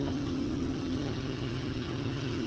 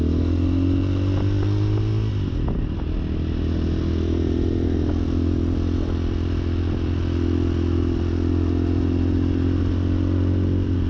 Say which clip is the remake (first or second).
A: first